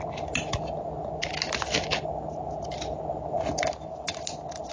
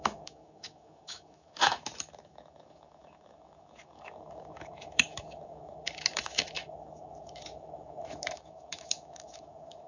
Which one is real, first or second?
first